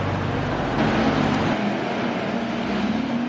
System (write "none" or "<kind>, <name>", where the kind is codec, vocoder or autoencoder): none